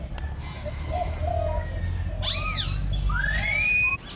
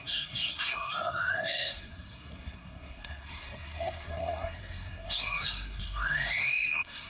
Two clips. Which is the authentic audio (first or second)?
first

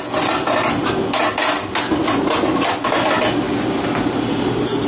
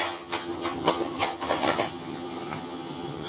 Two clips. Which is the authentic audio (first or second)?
first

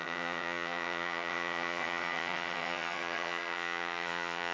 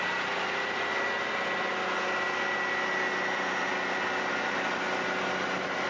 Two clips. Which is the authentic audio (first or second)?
second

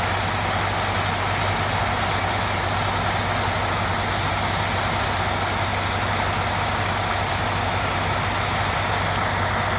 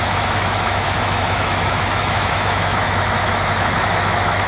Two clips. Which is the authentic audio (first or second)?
first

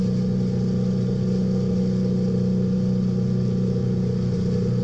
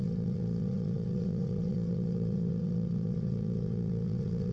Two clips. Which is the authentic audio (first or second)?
first